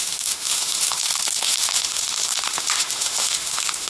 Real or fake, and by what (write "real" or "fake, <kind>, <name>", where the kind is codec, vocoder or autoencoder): fake, autoencoder, DAC-VAE